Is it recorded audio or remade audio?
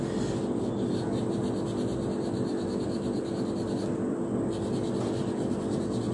recorded